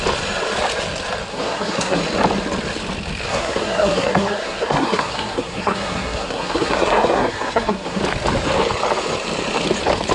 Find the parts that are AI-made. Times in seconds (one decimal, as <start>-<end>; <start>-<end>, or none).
1.3-2.0; 3.3-8.0